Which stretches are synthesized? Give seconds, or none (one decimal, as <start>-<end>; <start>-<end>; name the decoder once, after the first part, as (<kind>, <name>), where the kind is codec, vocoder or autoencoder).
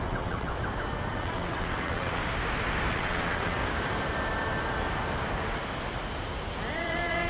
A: 0.0-0.5 (vocoder, WaveNeXt); 1.1-2.2; 2.9-3.6; 6.7-7.3